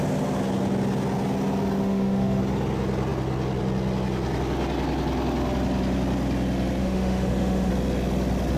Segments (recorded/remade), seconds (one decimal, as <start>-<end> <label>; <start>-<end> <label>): 0.0-1.8 recorded; 1.8-2.4 remade; 2.4-6.8 recorded; 6.8-7.7 remade; 7.7-8.6 recorded